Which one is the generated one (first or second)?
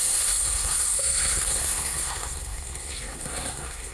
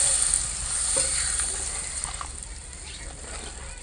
first